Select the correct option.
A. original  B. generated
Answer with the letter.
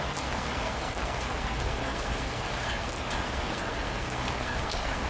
B